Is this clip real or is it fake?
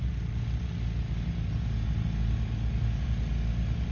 real